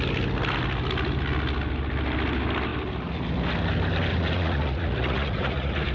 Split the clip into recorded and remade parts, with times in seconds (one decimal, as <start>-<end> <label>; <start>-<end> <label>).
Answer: 0.0-4.1 recorded; 4.1-5.9 remade